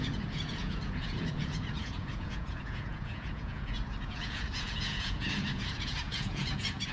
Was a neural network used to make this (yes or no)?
yes